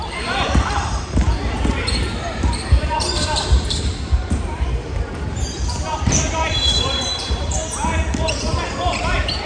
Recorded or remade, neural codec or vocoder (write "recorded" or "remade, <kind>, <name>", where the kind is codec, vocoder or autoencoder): remade, vocoder, BigVGAN v2